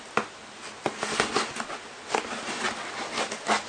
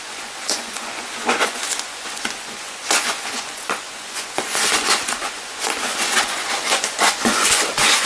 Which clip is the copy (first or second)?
second